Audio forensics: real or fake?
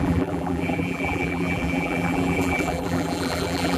fake